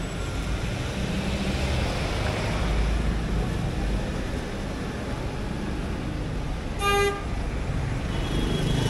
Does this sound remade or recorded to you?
recorded